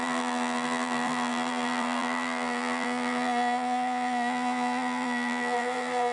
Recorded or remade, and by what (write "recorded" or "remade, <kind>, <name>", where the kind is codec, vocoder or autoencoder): remade, vocoder, BigVGAN v2